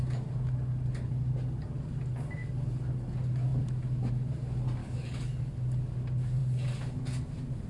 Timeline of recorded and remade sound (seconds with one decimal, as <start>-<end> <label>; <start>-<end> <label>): 0.0-4.8 recorded; 4.8-5.5 remade; 5.5-7.7 recorded